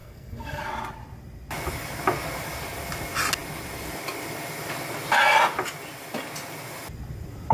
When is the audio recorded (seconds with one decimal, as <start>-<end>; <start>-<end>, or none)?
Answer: 0.6-7.5